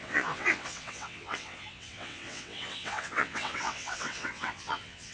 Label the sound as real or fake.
fake